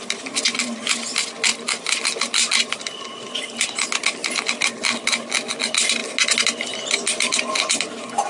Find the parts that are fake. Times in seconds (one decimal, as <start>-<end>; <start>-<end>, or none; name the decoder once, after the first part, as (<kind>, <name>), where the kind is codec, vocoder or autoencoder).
none